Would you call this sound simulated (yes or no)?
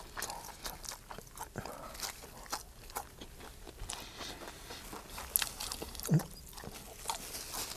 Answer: no